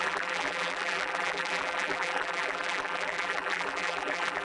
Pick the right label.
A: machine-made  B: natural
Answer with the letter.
A